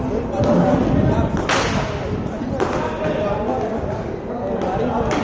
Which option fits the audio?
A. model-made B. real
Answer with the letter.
B